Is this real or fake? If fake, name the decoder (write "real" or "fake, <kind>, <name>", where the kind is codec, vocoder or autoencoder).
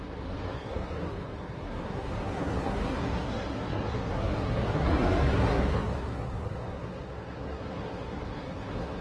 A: fake, codec, SNAC